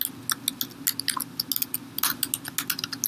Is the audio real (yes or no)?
yes